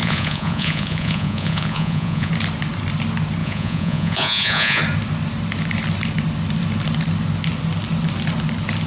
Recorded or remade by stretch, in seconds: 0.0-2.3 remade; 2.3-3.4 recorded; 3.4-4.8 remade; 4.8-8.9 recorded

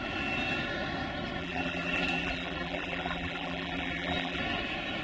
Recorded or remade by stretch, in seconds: 0.0-1.4 recorded; 1.4-4.4 remade; 4.4-5.0 recorded

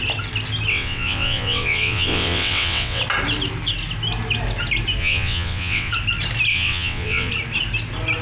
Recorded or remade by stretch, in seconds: 0.0-0.7 recorded; 0.7-3.0 remade; 3.0-5.0 recorded; 5.0-5.9 remade; 5.9-6.5 recorded; 6.5-7.3 remade; 7.3-8.2 recorded

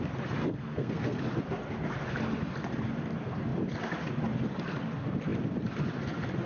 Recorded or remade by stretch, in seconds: 0.0-0.4 recorded; 0.4-1.2 remade; 1.2-6.5 recorded

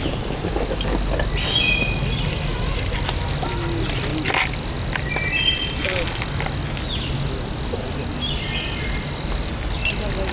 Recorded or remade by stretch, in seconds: 0.0-10.3 recorded

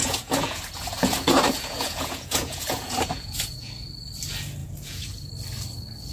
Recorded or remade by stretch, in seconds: 0.0-3.7 remade; 3.7-4.6 recorded; 4.6-5.3 remade; 5.3-6.1 recorded